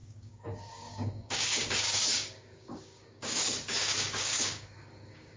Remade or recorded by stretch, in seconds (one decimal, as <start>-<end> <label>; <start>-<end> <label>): 0.0-5.4 remade